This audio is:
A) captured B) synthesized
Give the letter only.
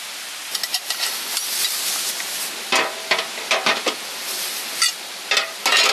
A